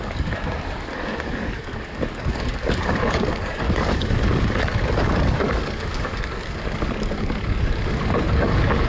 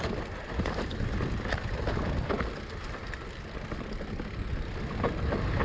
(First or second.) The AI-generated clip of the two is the first